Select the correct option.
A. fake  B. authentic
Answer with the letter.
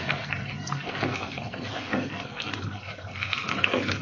A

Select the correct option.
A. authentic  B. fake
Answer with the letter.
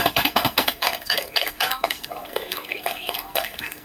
B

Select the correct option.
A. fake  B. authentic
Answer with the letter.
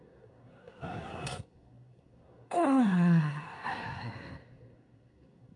A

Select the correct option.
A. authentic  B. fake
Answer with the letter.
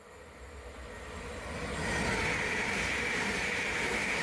A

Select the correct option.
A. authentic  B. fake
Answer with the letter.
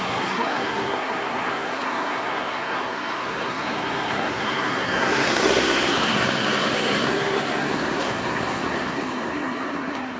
B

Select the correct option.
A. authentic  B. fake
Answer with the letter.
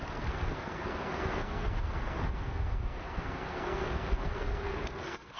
B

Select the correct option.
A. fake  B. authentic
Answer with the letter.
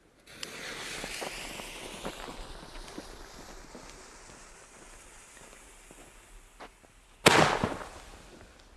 B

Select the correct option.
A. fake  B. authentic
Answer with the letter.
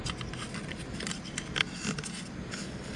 B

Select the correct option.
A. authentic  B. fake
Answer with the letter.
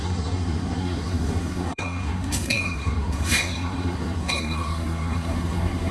B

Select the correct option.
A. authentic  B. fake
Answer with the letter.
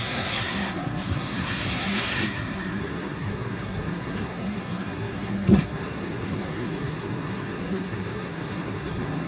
B